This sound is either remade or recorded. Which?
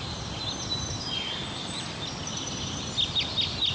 recorded